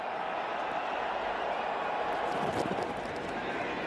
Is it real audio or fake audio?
real